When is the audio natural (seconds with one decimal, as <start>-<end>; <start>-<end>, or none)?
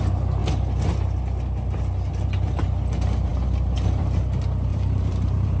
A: 0.0-4.7